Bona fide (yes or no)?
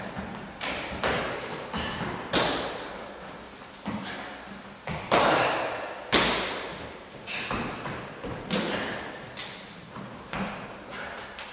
yes